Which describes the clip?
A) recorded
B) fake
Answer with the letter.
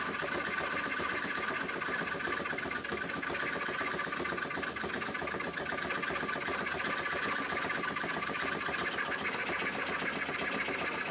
A